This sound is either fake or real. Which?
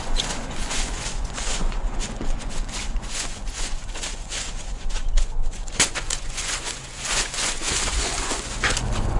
fake